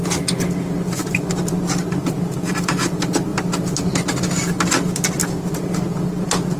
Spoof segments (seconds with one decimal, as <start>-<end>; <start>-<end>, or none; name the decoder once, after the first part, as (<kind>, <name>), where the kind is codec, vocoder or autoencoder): none